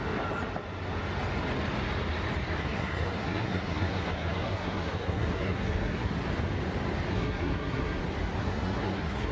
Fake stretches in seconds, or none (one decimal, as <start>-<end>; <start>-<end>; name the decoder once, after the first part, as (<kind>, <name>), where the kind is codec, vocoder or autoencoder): 2.6-6.1 (codec, SNAC); 7.1-8.0; 8.4-9.3